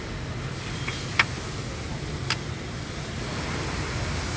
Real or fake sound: real